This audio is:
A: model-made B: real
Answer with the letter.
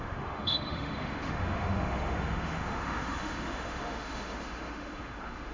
A